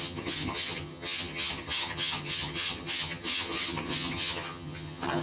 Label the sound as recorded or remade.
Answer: remade